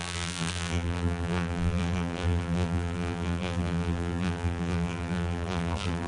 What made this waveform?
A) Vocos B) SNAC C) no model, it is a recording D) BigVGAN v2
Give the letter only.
D